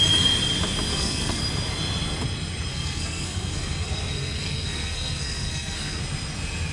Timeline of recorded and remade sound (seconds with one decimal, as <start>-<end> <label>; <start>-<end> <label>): 0.0-0.9 recorded; 0.9-1.4 remade; 1.4-2.7 recorded; 2.7-6.0 remade; 6.0-6.7 recorded